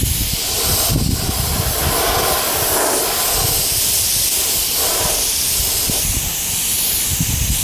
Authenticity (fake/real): real